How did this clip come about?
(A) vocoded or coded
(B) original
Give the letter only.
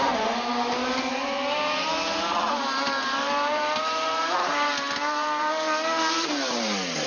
A